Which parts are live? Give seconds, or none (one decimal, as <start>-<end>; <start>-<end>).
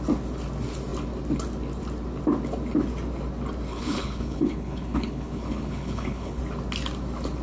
0.0-3.7; 6.4-7.4